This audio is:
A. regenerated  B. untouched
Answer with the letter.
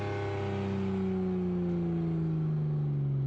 B